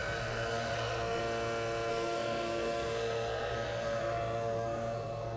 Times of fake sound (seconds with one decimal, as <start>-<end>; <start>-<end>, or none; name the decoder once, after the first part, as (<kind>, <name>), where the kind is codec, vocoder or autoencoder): 0.0-1.2 (codec, SNAC); 1.9-5.4